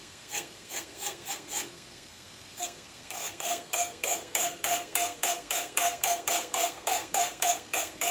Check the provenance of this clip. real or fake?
fake